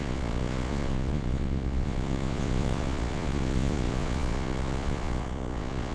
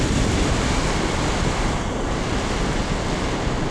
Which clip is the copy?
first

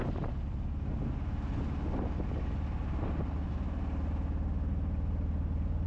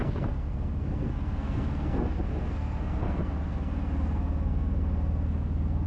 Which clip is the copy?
second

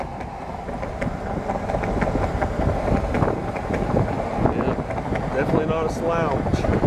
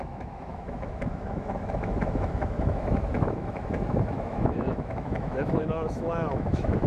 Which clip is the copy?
second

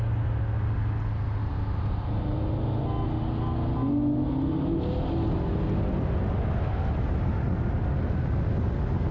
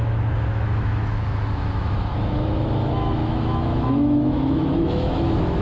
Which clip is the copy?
second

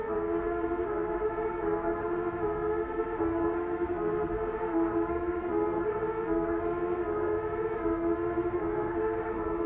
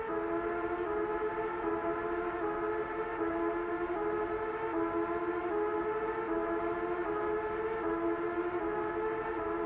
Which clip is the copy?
first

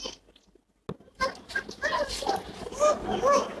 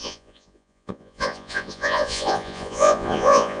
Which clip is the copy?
second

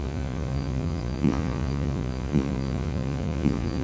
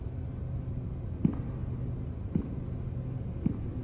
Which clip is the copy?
first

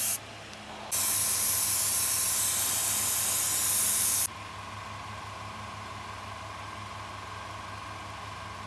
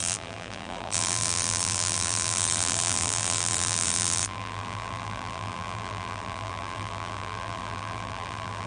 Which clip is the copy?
second